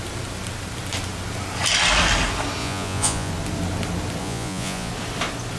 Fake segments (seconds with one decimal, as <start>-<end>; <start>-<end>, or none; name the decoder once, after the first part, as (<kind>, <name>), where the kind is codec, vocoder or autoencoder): 2.6-3.3 (vocoder, Vocos); 4.2-4.9